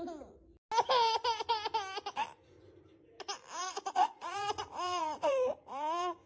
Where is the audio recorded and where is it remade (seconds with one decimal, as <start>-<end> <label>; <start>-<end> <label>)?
0.0-3.6 recorded; 3.6-6.3 remade